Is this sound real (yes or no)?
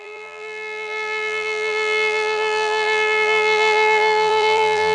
no